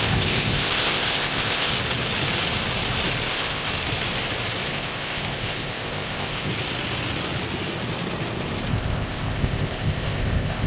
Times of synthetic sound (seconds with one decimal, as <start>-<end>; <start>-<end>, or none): 0.0-1.7; 3.3-3.7; 4.7-6.5; 8.7-10.7